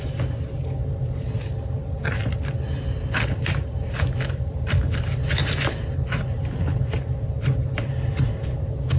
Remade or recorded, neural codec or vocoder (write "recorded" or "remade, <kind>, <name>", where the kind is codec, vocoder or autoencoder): recorded